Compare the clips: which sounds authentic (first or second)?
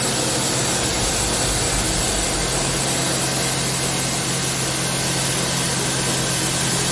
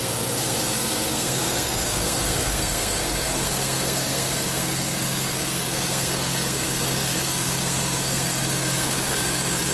first